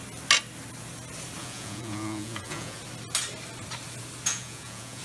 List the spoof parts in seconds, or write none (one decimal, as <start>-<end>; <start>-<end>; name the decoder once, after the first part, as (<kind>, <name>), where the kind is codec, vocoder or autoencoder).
1.4-2.8 (vocoder, Vocos); 4.3-5.0